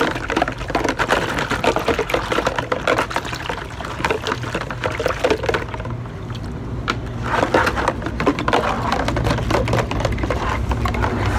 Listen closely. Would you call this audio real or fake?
real